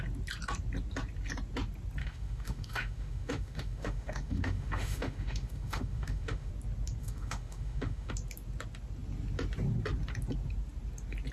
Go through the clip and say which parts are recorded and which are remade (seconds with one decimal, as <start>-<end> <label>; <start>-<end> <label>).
0.0-2.0 recorded; 2.0-6.5 remade; 6.5-7.0 recorded; 7.0-8.1 remade; 8.1-11.3 recorded